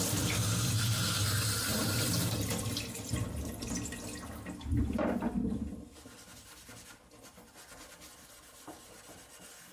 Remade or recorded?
recorded